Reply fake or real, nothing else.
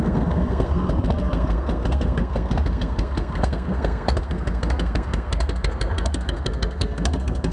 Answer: fake